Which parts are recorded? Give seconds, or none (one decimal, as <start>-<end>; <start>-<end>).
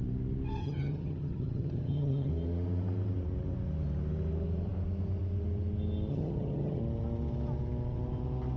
0.0-0.6; 2.3-6.1; 6.8-8.6